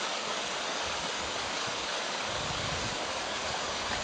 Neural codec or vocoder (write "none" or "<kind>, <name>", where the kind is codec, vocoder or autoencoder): codec, DAC